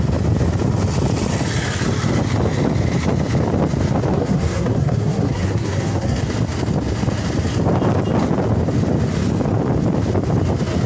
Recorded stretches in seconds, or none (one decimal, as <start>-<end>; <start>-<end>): 0.0-4.1; 6.2-10.9